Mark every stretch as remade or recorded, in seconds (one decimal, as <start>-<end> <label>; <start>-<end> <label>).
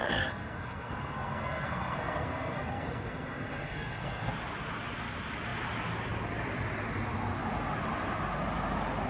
0.0-4.3 remade; 4.3-9.1 recorded